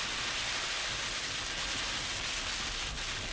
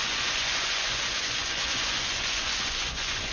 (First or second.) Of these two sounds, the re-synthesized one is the second